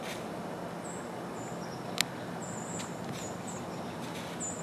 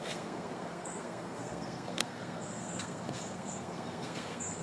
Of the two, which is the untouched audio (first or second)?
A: first